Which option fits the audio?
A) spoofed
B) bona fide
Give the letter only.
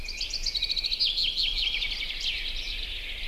B